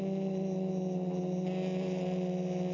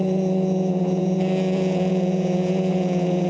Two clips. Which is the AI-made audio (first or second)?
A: second